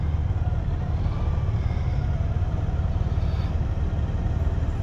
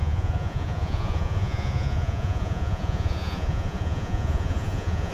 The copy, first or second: second